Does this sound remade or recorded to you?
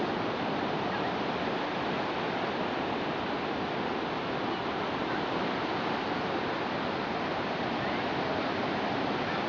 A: recorded